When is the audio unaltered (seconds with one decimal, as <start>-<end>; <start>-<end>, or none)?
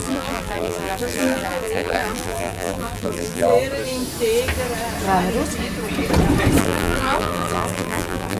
3.5-6.6